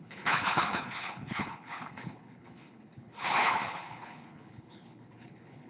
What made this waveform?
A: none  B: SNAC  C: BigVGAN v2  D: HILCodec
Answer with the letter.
D